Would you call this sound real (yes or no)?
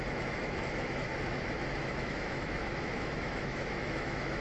no